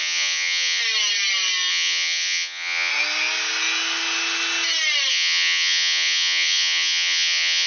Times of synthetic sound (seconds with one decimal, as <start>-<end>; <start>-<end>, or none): 0.0-0.8; 1.7-2.9; 5.1-7.7